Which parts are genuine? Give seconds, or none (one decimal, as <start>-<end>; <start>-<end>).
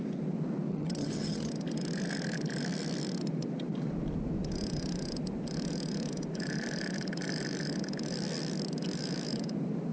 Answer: 0.0-0.7; 1.5-9.9